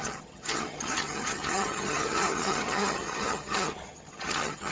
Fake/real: fake